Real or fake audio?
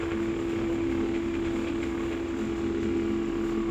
fake